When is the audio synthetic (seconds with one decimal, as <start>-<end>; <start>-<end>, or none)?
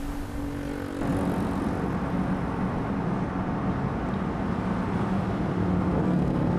5.9-6.6